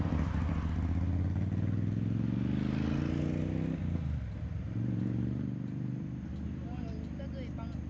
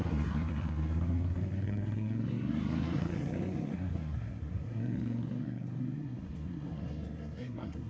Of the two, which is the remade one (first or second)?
second